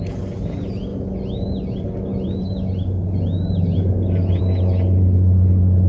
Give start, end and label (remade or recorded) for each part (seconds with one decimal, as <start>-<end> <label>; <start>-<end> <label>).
0.0-5.9 recorded